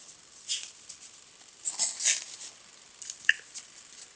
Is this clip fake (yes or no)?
no